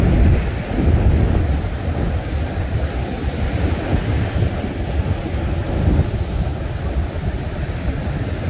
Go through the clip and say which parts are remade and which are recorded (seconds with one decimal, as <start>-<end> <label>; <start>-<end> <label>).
0.0-8.5 recorded